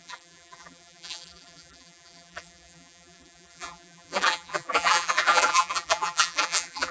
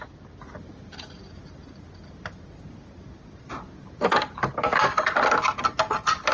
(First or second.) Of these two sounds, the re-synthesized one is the first